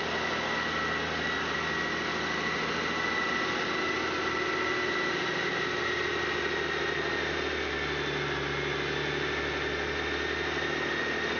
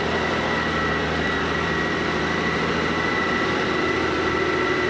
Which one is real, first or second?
first